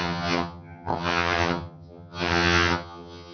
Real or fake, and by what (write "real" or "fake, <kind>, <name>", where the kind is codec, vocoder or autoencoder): fake, vocoder, HiFi-GAN